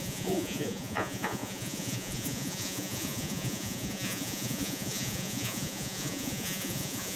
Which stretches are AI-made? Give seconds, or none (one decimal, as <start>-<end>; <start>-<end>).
0.0-7.2